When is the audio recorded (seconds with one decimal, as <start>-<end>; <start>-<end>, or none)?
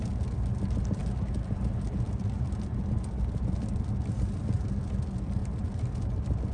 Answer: 0.0-6.5